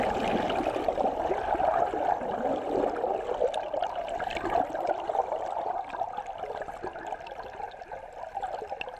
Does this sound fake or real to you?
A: real